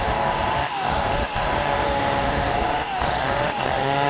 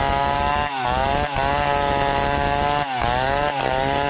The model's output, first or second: first